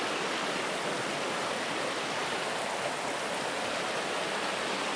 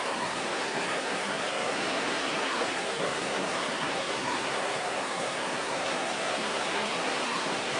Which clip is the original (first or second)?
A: first